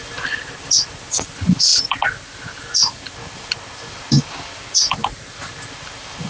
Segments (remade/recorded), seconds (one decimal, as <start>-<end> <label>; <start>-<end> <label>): 0.0-6.3 recorded